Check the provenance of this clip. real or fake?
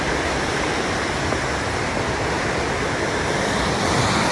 real